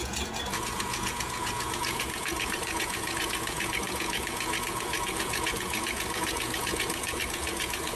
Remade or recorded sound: remade